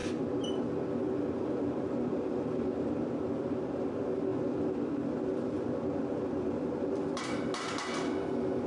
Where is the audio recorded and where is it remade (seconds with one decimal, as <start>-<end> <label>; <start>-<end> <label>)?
0.0-2.3 recorded; 2.3-2.9 remade; 2.9-4.3 recorded; 4.3-7.2 remade; 7.2-8.7 recorded